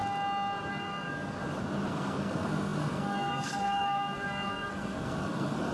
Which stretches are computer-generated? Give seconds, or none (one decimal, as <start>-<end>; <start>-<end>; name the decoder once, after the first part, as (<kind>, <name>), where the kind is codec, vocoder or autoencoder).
0.7-1.4 (codec, SNAC); 1.9-5.7